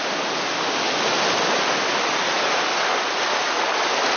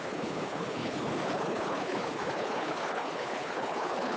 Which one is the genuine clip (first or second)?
first